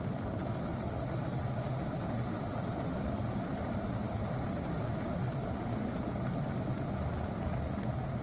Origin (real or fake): real